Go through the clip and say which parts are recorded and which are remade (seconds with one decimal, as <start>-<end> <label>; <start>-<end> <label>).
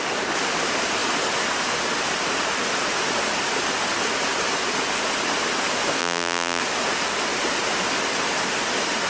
0.0-6.0 recorded; 6.0-6.6 remade; 6.6-9.1 recorded